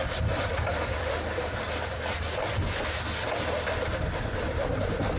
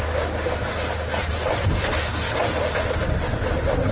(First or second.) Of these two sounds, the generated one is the first